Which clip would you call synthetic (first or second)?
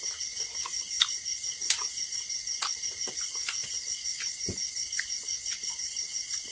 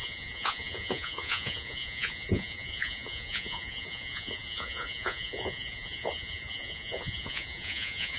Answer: second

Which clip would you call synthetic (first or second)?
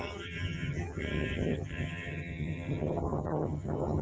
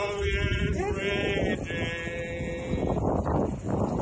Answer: first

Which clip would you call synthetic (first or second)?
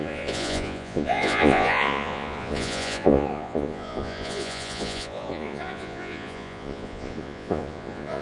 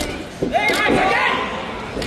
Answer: first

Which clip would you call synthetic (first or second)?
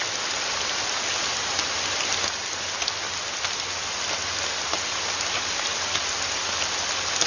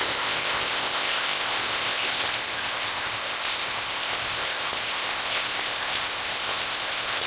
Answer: second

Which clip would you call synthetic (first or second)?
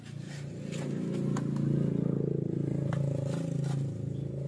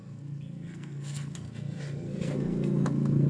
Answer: second